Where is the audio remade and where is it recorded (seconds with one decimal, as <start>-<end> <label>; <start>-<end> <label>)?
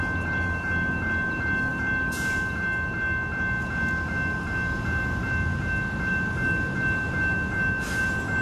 0.0-8.4 recorded